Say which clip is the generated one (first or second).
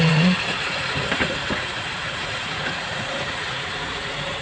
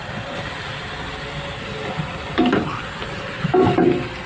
first